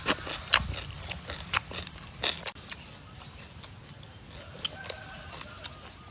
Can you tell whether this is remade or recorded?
recorded